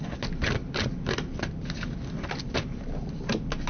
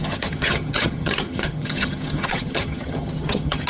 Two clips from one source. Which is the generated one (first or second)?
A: second